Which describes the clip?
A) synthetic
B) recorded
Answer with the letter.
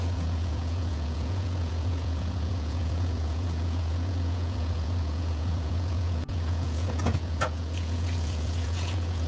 A